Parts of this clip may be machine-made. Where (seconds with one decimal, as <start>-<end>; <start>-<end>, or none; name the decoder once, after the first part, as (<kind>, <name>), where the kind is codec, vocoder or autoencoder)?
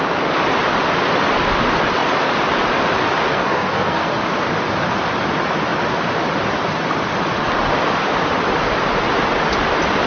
3.3-4.1 (codec, SNAC)